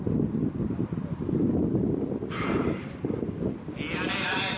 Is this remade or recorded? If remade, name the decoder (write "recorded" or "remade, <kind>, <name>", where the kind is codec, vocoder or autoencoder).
recorded